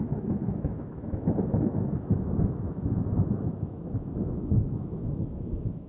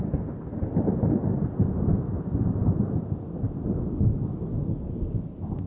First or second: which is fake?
first